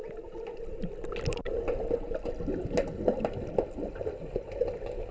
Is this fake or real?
real